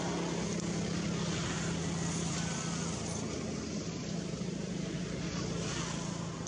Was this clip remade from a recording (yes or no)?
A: no